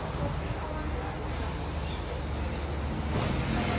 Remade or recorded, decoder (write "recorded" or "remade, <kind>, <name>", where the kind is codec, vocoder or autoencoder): recorded